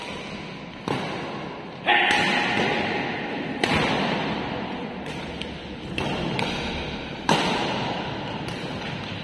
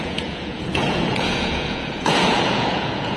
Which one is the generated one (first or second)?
second